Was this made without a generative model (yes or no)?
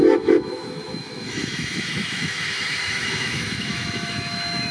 no